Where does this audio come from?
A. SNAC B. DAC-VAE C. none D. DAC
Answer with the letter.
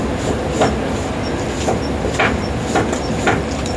C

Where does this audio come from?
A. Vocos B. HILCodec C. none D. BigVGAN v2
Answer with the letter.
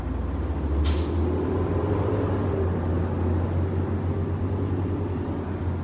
C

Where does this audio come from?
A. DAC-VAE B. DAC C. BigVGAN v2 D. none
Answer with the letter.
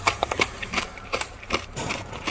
C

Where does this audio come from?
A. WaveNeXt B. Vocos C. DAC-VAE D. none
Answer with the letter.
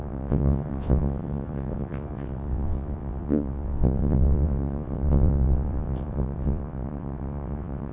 A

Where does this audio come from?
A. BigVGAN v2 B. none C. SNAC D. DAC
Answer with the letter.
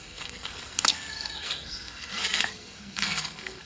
C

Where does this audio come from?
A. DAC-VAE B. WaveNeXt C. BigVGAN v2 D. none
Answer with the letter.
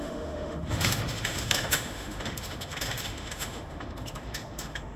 A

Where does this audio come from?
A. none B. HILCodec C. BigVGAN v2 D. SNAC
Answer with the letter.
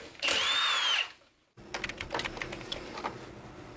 A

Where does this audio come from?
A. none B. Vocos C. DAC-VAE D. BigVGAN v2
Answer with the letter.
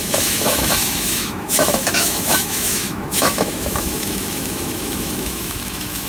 C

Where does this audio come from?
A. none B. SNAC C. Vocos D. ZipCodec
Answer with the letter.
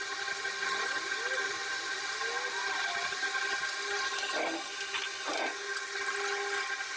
A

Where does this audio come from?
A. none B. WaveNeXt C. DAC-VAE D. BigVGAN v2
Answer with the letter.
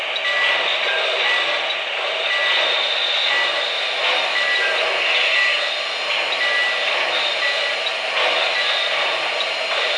A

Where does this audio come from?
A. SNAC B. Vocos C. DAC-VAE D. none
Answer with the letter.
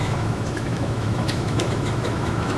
C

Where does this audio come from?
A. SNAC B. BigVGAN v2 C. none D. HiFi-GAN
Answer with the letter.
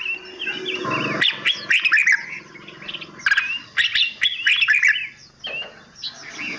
C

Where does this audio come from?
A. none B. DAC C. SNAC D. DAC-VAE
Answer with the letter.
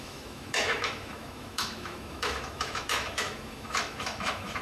D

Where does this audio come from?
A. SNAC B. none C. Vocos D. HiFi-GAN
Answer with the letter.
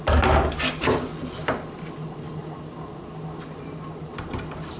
B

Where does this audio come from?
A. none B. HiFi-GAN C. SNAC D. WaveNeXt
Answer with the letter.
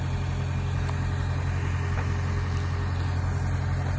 A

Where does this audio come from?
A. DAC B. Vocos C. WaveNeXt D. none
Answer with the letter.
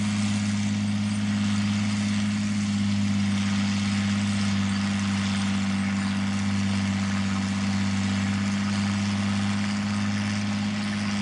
D